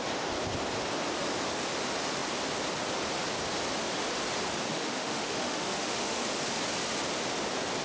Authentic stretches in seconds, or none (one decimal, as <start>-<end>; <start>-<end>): 0.0-4.7; 6.3-7.8